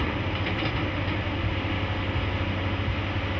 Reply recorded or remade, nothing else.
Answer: recorded